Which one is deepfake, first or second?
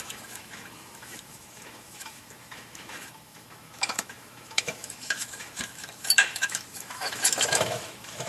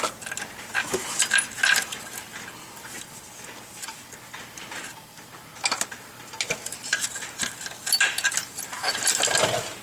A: first